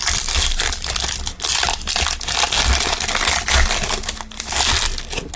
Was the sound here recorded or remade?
recorded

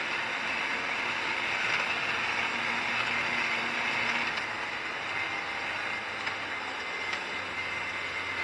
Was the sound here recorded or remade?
recorded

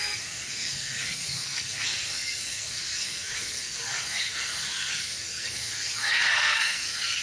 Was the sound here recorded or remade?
remade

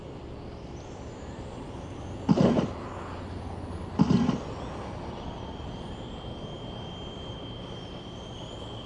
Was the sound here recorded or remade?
recorded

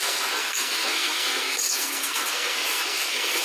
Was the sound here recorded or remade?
remade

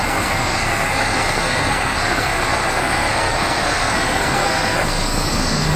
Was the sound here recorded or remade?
remade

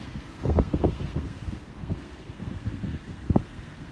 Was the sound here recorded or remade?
remade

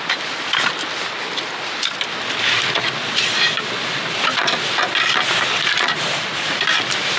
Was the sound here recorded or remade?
recorded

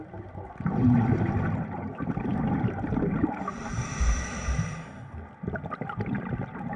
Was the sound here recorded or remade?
recorded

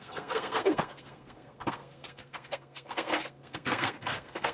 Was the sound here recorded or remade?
remade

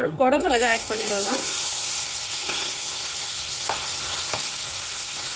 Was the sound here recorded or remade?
remade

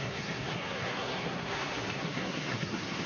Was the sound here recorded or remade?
remade